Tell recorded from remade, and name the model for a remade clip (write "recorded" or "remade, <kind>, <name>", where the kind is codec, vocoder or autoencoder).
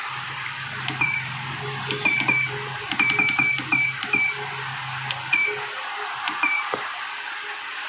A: recorded